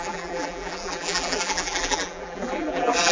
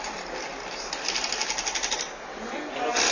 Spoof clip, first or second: first